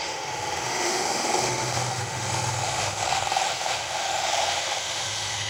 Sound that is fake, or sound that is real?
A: fake